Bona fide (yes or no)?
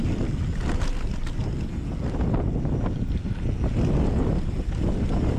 yes